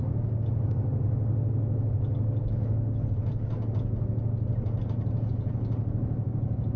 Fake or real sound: real